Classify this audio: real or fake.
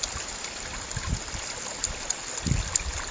real